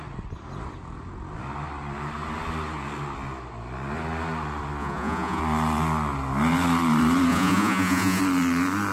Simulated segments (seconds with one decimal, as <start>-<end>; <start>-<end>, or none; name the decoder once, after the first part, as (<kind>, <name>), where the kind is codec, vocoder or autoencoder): 4.8-5.4 (vocoder, Vocos); 7.3-8.2